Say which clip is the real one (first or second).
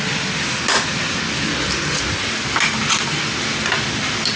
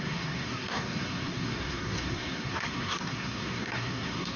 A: first